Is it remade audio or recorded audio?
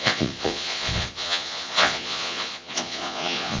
remade